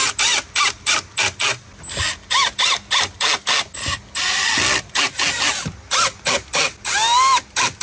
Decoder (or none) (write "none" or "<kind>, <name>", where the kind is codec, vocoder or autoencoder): none